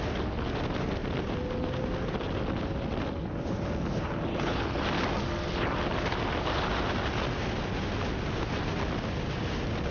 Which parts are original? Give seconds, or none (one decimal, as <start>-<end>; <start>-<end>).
0.0-4.3; 4.8-9.9